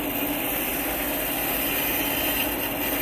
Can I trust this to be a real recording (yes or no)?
yes